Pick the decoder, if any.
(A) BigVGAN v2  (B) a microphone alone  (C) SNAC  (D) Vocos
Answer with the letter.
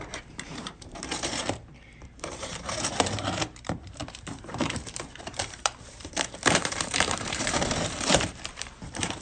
A